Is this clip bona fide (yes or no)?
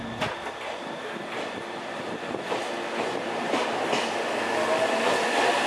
yes